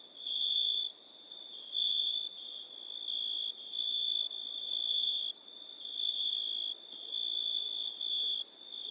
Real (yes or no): yes